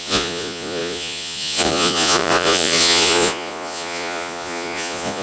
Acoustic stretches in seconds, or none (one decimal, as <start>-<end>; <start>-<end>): none